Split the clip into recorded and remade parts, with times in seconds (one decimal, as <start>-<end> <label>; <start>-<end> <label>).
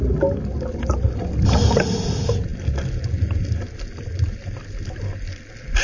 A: 0.0-5.8 recorded